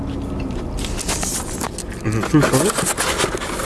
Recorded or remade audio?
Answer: recorded